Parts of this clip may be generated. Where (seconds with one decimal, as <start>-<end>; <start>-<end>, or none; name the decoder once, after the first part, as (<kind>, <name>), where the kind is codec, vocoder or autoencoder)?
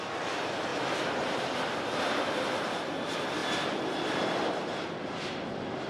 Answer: 0.0-3.4 (vocoder, BigVGAN v2); 5.1-5.9